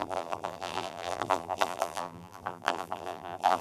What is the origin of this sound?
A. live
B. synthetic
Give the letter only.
B